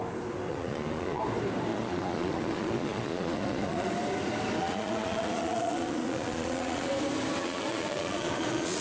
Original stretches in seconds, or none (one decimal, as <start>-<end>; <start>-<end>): 0.0-0.5; 1.2-1.7; 3.9-4.6; 6.9-7.4